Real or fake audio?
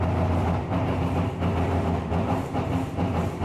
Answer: fake